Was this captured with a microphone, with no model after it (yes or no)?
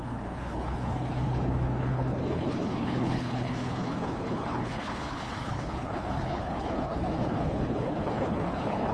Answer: no